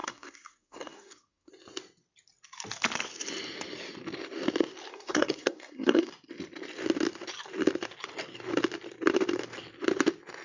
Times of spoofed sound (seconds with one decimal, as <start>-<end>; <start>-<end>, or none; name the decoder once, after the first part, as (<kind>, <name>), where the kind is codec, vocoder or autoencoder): 0.0-1.5 (codec, SNAC); 4.9-6.1